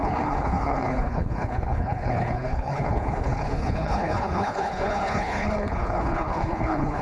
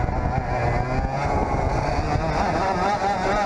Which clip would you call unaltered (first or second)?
second